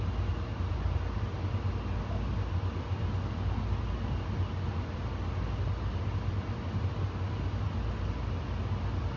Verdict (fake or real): real